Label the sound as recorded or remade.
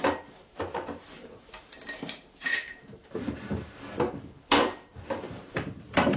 remade